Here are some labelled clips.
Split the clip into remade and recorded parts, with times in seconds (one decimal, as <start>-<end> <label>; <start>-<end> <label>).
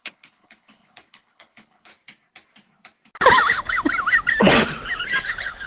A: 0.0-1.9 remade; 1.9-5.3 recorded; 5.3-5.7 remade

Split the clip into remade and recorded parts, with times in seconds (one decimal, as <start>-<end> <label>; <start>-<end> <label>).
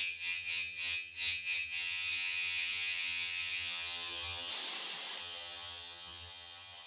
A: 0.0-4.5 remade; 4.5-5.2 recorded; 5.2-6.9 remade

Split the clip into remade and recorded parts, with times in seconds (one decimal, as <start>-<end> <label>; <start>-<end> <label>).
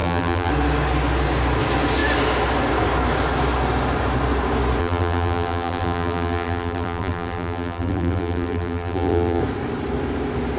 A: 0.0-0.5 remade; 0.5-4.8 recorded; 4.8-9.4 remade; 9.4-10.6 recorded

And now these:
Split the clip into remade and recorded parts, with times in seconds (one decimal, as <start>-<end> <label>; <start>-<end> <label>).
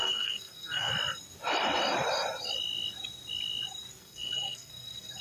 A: 0.0-0.9 remade; 0.9-4.0 recorded; 4.0-5.2 remade